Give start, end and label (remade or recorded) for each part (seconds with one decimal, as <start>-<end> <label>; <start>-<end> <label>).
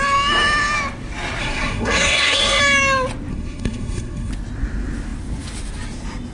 0.0-1.4 recorded; 1.4-2.6 remade; 2.6-3.3 recorded; 3.3-4.3 remade; 4.3-6.3 recorded